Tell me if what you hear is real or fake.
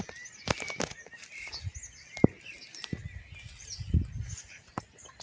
real